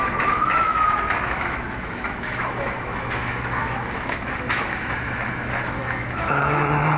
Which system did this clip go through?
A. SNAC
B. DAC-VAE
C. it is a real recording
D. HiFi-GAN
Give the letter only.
B